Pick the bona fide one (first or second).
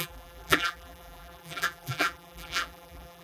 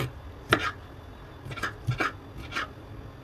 second